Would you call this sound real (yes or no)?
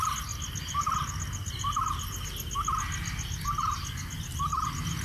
yes